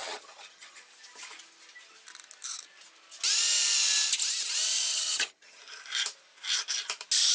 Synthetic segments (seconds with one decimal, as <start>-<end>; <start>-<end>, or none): 0.0-0.8; 4.9-5.6